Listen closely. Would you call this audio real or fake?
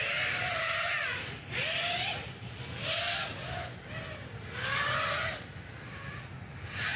real